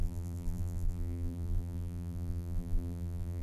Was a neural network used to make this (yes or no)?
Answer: yes